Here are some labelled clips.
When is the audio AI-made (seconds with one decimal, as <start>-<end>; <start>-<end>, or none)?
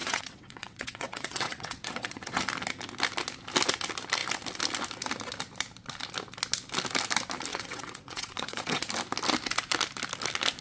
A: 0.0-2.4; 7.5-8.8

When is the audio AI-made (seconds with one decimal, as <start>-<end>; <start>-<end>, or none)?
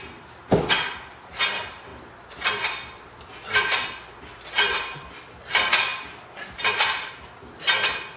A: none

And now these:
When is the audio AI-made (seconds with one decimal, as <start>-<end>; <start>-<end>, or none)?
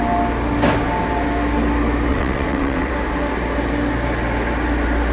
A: 2.1-2.9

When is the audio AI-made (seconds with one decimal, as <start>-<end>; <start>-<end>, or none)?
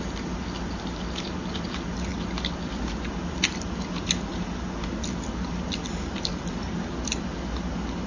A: none